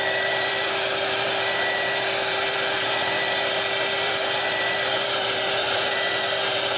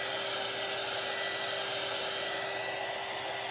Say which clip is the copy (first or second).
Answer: first